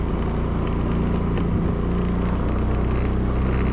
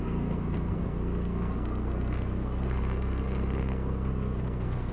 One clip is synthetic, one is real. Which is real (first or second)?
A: first